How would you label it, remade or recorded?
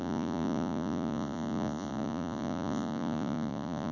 remade